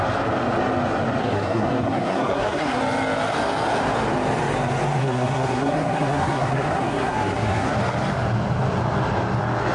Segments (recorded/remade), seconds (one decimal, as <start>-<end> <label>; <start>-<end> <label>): 0.0-1.2 recorded; 1.2-2.8 remade; 2.8-5.0 recorded; 5.0-7.8 remade; 7.8-9.7 recorded